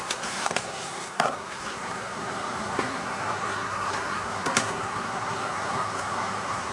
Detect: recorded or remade remade